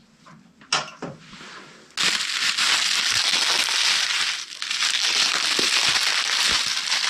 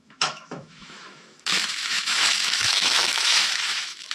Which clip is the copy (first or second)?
second